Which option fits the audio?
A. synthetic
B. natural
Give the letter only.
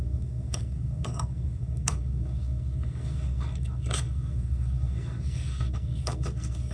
A